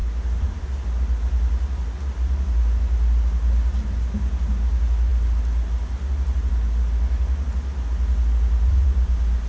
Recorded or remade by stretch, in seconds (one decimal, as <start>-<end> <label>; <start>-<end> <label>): 0.0-9.5 recorded